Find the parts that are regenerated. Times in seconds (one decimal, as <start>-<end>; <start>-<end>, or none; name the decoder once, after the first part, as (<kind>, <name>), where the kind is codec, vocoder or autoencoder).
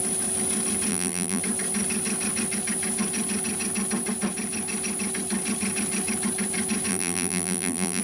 0.9-1.4 (vocoder, BigVGAN v2); 6.9-8.0